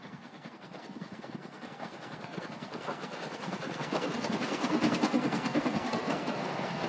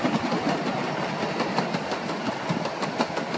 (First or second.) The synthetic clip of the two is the first